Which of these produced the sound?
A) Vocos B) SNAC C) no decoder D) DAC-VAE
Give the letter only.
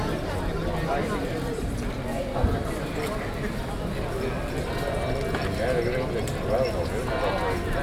C